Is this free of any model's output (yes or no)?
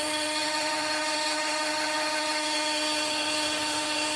no